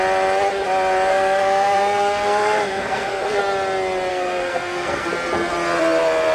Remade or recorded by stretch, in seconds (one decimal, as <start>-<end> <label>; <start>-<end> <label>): 0.0-1.1 recorded; 1.1-3.4 remade; 3.4-4.1 recorded; 4.1-5.1 remade; 5.1-6.3 recorded